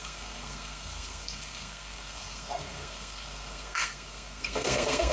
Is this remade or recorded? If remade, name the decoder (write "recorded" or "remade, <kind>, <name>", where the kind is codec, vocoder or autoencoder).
remade, codec, SNAC